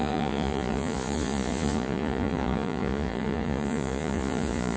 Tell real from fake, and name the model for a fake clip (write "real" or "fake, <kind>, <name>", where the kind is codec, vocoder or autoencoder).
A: fake, vocoder, Vocos